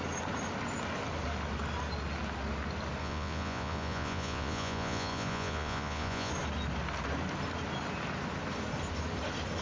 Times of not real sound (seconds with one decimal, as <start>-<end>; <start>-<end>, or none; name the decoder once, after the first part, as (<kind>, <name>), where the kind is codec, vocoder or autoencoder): 3.0-6.3 (vocoder, Vocos)

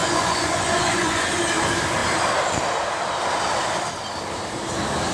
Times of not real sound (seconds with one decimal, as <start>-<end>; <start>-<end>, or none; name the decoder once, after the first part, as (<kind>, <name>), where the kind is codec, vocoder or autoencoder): 0.0-1.3 (vocoder, Vocos)